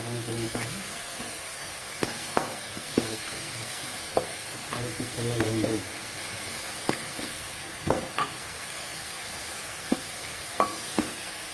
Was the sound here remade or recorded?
remade